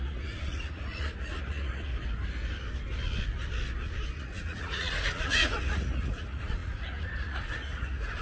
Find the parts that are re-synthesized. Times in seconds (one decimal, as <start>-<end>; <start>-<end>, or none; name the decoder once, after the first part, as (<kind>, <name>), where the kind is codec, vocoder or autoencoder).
0.0-1.9 (vocoder, Vocos); 4.2-8.2